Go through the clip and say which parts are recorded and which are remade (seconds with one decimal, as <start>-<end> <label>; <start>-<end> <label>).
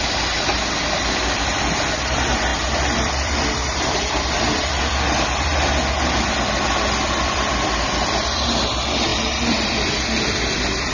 0.0-5.5 remade; 5.5-6.2 recorded; 6.2-10.9 remade